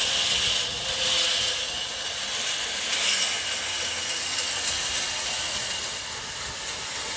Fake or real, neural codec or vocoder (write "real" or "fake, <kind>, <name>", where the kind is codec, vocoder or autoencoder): real